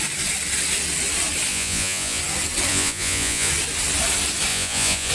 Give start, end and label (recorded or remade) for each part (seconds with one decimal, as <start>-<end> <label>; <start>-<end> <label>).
0.0-1.5 recorded; 1.5-2.2 remade; 2.2-2.7 recorded; 2.7-3.5 remade; 3.5-4.5 recorded; 4.5-5.1 remade